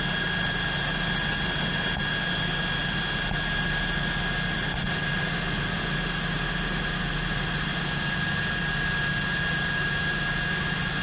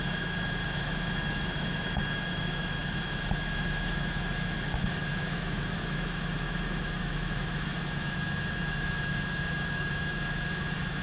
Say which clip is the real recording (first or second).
first